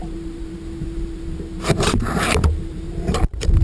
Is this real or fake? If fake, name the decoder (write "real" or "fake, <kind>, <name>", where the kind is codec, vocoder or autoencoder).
fake, vocoder, BigVGAN v2